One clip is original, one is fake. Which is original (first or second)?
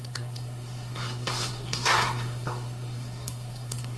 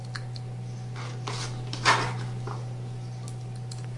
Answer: second